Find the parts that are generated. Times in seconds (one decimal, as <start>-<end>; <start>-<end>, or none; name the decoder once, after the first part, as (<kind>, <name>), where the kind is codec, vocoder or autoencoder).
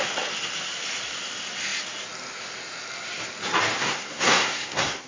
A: 3.8-5.1 (codec, SNAC)